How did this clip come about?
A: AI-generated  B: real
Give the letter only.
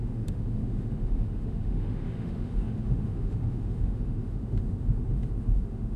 A